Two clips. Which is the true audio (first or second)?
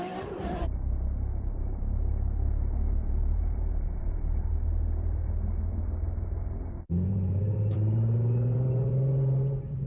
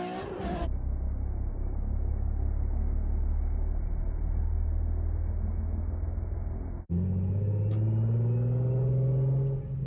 second